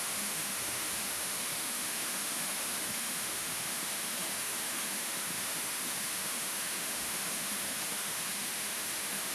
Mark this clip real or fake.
fake